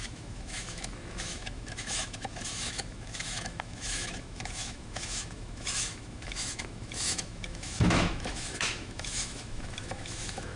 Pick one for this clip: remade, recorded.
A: remade